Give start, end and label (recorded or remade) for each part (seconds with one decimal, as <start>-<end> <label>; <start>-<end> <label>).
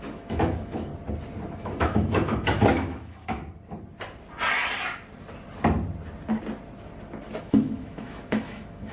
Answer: 0.0-0.9 remade; 0.9-1.6 recorded; 1.6-3.4 remade; 3.4-7.4 recorded; 7.4-8.9 remade